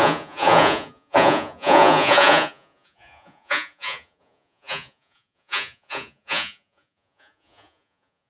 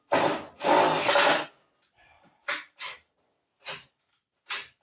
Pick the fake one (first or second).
first